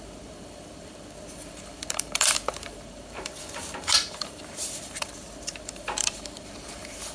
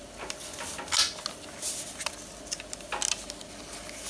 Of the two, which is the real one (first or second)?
second